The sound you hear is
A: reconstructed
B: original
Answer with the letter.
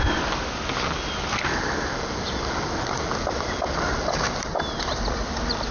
B